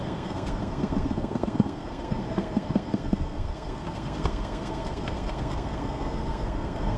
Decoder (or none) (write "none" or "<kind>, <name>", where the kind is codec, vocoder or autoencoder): codec, SNAC